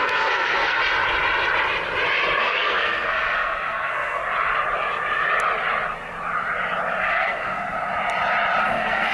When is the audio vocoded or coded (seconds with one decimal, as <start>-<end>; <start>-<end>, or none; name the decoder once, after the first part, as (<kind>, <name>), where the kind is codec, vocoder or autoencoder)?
0.0-0.8 (codec, SNAC); 2.4-4.2; 7.0-7.7; 8.6-9.1